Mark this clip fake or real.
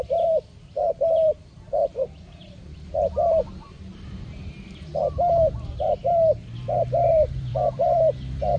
fake